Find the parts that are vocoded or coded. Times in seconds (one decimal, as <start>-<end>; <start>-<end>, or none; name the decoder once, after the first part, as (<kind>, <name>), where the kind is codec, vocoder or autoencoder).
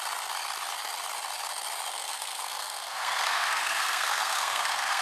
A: 1.9-5.0 (codec, SNAC)